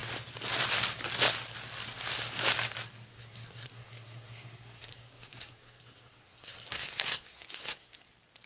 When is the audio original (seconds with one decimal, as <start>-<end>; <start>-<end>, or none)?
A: 0.0-3.1; 8.1-8.5

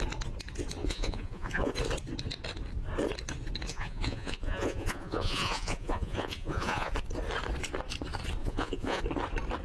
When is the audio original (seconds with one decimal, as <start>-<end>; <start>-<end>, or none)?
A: 0.0-0.8; 1.7-3.7; 6.9-8.4; 9.0-9.6

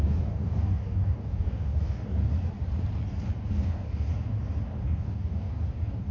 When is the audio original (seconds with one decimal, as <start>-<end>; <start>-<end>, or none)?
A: 2.3-3.5; 4.1-4.7

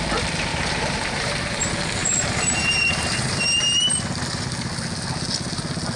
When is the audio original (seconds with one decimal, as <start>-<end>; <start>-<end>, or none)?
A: 0.0-0.5; 1.6-2.0; 4.0-6.0

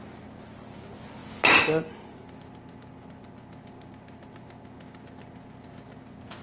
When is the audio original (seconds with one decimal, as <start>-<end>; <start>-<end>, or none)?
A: 0.0-6.4

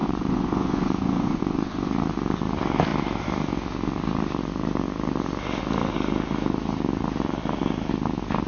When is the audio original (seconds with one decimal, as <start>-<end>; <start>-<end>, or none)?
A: 1.9-8.5

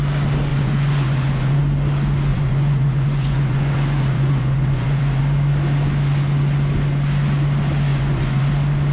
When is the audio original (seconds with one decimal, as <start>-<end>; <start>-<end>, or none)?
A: 0.0-0.5; 1.6-2.3; 5.2-7.9; 8.5-8.9

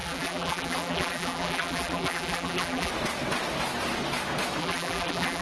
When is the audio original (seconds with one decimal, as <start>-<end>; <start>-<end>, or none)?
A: 2.9-4.6